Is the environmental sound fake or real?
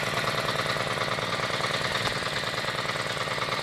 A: real